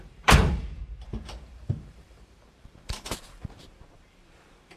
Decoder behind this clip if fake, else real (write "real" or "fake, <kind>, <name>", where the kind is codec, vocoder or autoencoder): fake, vocoder, BigVGAN v2